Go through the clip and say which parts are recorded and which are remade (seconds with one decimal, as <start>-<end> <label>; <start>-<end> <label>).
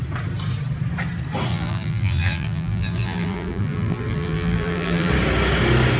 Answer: 0.0-1.5 recorded; 1.5-5.1 remade; 5.1-6.0 recorded